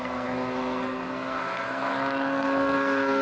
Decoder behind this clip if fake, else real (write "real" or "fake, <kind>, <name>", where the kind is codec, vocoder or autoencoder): fake, codec, SNAC